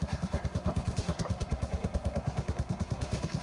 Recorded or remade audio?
remade